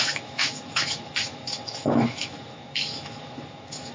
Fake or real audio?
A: fake